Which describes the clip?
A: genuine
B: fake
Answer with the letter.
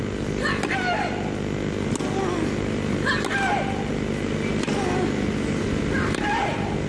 A